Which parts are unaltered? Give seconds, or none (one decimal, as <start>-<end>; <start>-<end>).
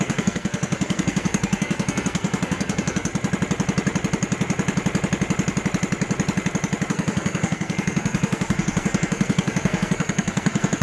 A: 3.1-6.9